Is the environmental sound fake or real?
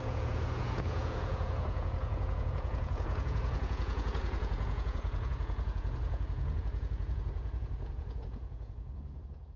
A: fake